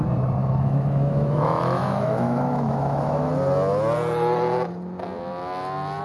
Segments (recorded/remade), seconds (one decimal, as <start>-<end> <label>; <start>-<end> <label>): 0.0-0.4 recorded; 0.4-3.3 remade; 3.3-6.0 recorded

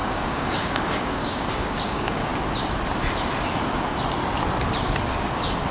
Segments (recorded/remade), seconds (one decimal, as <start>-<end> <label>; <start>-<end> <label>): 0.0-2.3 remade; 2.3-5.7 recorded

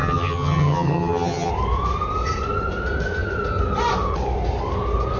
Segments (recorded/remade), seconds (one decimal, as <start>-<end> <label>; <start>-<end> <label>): 0.0-1.5 remade; 1.5-5.2 recorded

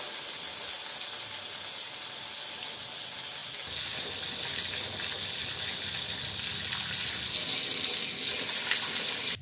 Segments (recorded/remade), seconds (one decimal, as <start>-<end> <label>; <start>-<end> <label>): 0.0-9.4 recorded

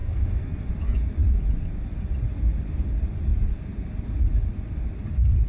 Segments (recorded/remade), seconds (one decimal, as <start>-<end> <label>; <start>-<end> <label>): 0.0-0.7 remade; 0.7-5.5 recorded

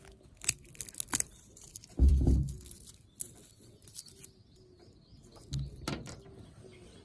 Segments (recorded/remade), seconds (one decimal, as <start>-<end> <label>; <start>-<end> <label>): 0.0-7.0 recorded